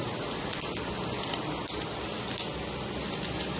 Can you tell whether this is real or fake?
real